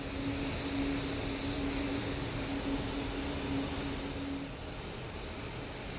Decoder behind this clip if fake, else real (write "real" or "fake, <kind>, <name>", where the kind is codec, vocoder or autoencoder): real